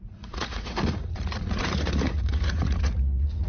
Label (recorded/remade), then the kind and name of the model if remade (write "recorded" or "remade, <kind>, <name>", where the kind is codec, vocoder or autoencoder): remade, vocoder, Vocos